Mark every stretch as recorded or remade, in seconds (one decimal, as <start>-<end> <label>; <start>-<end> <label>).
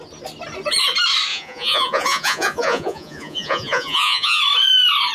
0.0-1.3 recorded; 1.3-4.4 remade; 4.4-5.1 recorded